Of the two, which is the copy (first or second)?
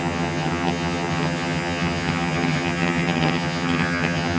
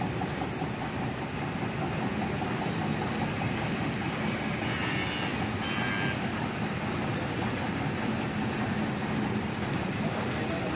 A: first